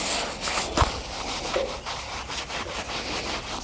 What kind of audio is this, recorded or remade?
recorded